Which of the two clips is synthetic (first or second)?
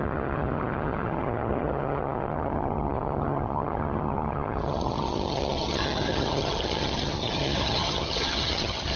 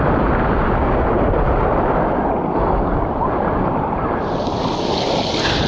first